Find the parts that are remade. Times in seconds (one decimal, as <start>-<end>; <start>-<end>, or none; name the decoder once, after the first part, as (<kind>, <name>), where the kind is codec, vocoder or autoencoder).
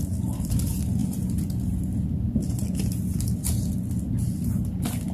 none